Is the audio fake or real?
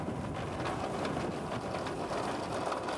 real